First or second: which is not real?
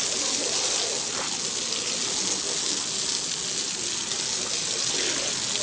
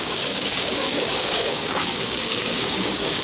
second